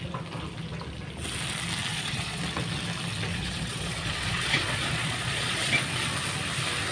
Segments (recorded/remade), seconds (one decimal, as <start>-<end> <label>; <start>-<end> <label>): 0.0-1.9 recorded; 1.9-2.4 remade; 2.4-3.3 recorded; 3.3-5.8 remade; 5.8-6.9 recorded